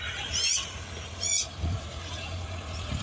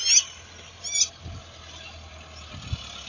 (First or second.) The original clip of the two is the second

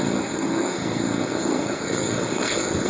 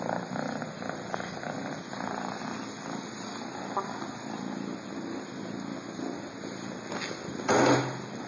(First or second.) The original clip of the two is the second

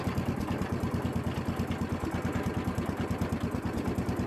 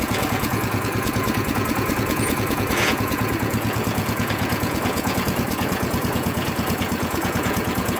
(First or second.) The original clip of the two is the first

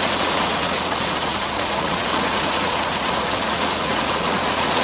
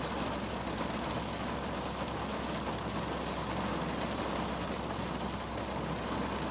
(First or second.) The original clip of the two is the second